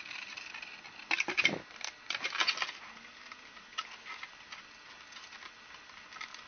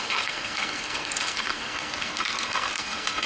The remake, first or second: second